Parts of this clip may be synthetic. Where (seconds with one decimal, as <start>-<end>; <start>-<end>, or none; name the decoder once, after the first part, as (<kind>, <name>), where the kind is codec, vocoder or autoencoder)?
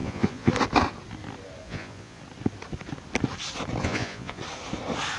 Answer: 0.0-0.5 (vocoder, Vocos); 1.6-2.2; 3.8-4.4